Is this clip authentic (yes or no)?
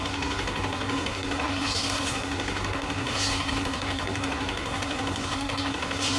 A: no